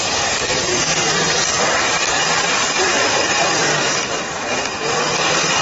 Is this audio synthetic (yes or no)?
yes